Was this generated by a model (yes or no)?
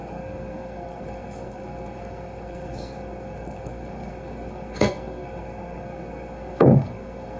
yes